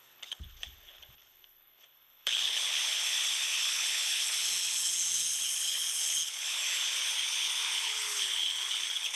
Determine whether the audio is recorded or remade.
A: remade